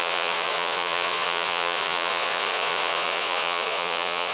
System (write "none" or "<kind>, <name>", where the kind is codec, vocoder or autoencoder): vocoder, Vocos